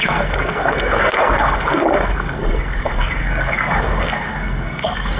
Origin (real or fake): fake